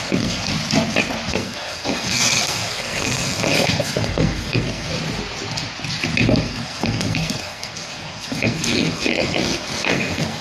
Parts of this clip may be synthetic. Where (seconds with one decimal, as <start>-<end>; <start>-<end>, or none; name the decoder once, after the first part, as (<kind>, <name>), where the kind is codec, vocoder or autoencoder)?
0.0-0.5 (codec, SNAC); 1.3-4.9; 6.2-10.4